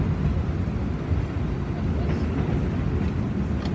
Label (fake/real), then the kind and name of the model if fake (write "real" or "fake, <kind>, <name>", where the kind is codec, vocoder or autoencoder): real